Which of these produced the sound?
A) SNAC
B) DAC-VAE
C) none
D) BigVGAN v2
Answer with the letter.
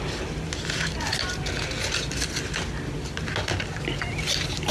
C